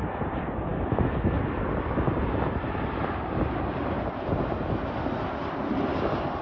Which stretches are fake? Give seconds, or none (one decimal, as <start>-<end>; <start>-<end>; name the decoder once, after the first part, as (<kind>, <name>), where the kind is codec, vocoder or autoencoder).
none